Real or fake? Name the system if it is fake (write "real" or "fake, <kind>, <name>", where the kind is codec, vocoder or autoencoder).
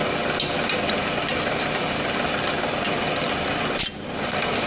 real